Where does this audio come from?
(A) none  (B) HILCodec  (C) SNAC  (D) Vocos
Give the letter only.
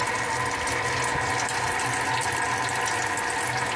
A